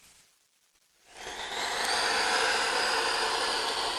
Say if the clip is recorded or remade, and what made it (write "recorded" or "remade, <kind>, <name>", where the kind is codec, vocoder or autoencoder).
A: recorded